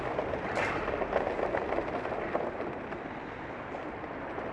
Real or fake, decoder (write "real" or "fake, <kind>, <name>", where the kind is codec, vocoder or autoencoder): real